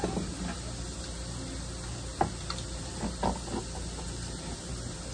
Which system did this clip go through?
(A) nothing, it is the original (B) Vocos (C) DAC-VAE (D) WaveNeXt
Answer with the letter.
A